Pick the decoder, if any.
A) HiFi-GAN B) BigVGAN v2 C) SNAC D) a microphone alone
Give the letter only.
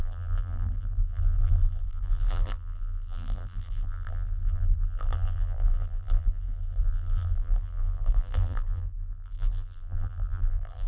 B